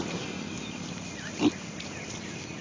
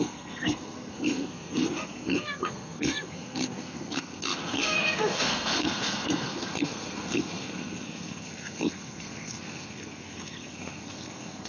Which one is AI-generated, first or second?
second